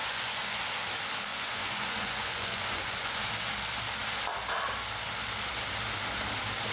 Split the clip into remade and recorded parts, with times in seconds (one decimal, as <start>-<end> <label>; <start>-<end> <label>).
0.0-0.6 remade; 0.6-1.3 recorded; 1.3-3.3 remade; 3.3-6.7 recorded